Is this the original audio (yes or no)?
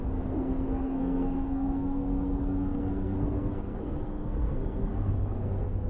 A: no